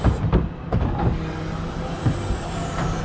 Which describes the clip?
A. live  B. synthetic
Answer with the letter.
A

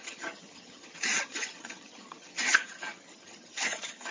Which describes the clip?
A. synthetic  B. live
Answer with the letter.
A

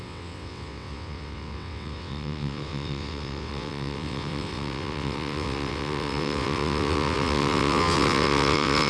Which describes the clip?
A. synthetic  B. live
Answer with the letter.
A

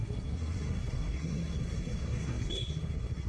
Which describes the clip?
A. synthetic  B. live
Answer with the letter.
A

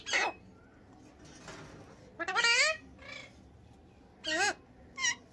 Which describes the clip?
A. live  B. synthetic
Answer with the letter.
A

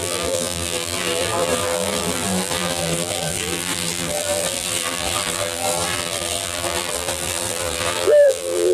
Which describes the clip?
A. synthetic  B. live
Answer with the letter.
A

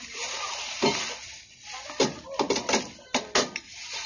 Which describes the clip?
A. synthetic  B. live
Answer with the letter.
B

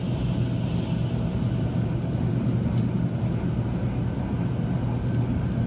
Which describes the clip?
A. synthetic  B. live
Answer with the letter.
B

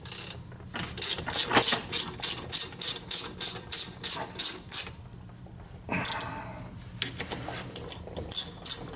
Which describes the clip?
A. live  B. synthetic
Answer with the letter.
A